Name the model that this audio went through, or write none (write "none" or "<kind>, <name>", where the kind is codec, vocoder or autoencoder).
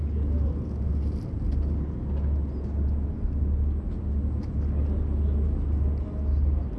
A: none